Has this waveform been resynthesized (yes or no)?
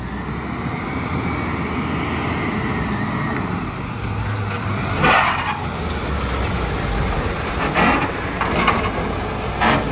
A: no